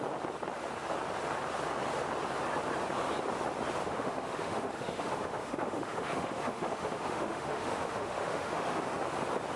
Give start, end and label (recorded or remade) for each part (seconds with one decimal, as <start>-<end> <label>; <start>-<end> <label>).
0.0-3.8 recorded; 3.8-8.8 remade; 8.8-9.6 recorded